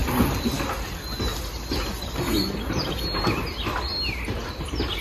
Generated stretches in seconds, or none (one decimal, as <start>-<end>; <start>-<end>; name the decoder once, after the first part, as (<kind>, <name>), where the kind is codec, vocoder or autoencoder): none